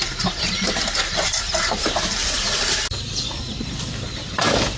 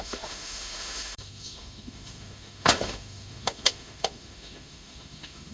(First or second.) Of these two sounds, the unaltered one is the first